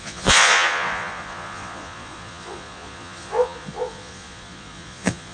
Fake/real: fake